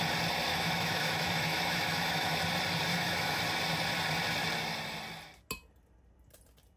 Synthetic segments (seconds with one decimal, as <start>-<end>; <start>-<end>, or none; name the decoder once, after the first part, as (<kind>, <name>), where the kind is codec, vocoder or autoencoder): 0.5-2.4 (autoencoder, DAC-VAE); 2.9-3.4